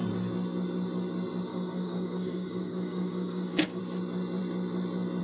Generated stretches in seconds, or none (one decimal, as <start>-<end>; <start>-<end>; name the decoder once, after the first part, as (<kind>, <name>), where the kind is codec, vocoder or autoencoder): 1.5-3.8 (codec, DAC)